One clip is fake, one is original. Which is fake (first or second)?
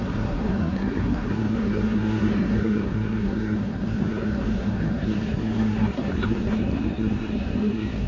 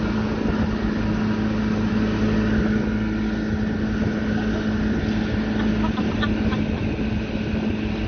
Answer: first